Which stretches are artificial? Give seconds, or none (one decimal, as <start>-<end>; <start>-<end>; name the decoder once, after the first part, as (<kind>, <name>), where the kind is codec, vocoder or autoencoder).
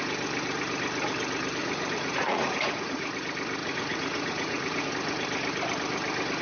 1.6-3.1 (vocoder, Vocos); 3.6-4.9